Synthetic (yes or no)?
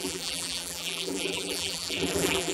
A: yes